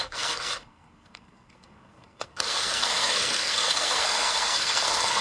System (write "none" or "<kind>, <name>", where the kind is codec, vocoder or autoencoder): codec, SNAC